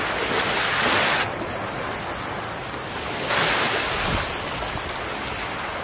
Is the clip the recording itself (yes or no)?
yes